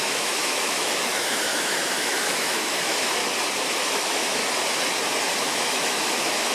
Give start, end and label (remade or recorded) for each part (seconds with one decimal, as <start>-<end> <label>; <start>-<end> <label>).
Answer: 0.0-3.2 remade; 3.2-3.7 recorded; 3.7-4.4 remade; 4.4-5.4 recorded; 5.4-6.5 remade